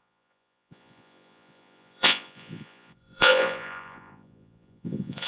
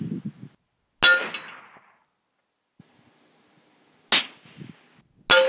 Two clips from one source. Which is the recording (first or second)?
second